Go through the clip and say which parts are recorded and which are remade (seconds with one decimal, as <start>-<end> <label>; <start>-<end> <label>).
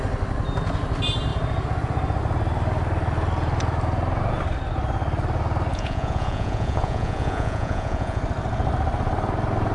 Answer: 0.0-5.7 recorded; 5.7-8.2 remade; 8.2-9.7 recorded